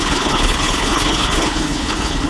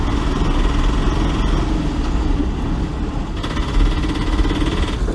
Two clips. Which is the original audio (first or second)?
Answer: second